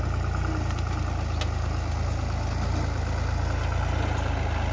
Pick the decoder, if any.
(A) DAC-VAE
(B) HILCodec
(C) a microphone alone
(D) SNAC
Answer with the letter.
C